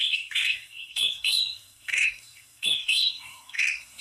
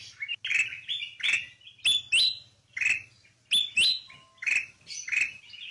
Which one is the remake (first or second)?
first